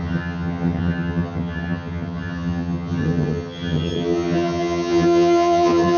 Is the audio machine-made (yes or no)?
yes